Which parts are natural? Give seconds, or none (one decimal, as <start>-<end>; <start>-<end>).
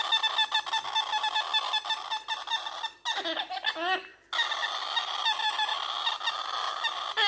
0.0-7.3